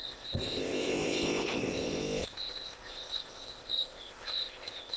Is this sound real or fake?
fake